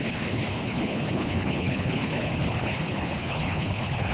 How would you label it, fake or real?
fake